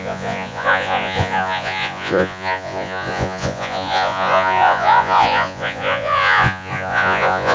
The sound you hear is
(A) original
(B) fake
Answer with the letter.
B